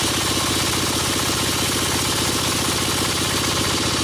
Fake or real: real